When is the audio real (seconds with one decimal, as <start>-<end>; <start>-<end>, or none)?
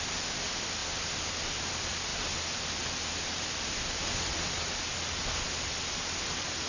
0.0-6.7